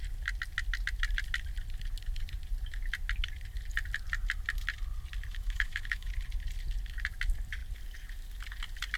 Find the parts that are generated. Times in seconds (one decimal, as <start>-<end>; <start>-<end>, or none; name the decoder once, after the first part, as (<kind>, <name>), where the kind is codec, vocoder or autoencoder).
5.3-6.1 (autoencoder, DAC-VAE)

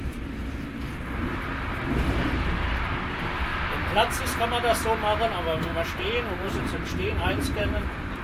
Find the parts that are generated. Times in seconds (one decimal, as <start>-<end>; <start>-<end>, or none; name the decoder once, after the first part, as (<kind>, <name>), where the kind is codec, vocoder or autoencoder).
0.0-1.3 (vocoder, BigVGAN v2); 1.9-3.5; 6.4-8.2

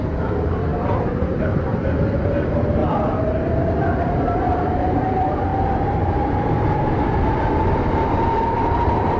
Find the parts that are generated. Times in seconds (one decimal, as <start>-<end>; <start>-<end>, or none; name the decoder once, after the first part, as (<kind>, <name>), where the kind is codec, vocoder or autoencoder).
0.0-2.8 (vocoder, BigVGAN v2); 4.0-5.5; 7.9-9.2

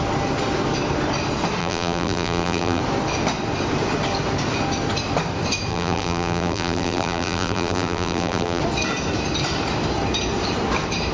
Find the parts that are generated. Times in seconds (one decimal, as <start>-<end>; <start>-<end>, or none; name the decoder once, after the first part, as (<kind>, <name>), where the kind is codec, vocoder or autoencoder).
1.6-2.8 (vocoder, BigVGAN v2); 5.7-8.6

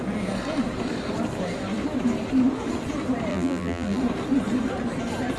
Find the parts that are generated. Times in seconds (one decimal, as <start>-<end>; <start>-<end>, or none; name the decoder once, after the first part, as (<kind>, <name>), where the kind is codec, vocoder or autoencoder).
3.3-4.0 (vocoder, BigVGAN v2)

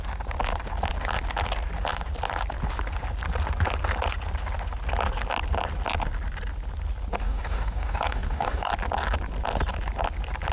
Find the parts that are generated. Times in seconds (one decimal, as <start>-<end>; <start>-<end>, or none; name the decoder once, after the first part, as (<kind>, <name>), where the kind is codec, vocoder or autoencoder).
7.2-8.7 (codec, DAC)

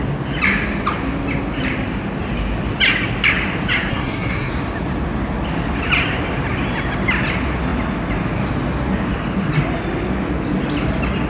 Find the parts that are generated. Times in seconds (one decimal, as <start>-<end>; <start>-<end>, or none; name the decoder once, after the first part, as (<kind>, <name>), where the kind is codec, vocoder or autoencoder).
3.9-4.5 (codec, SNAC)